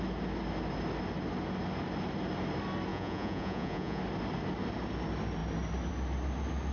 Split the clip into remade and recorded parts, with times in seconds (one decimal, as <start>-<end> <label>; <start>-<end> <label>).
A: 0.0-2.9 recorded; 2.9-4.0 remade; 4.0-6.7 recorded